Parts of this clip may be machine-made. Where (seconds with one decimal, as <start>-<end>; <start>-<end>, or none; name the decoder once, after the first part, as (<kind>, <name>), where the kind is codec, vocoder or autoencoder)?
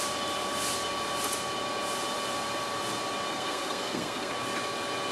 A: 3.3-4.3 (codec, SNAC)